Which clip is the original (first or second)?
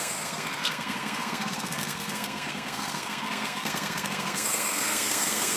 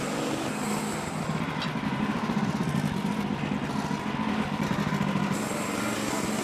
second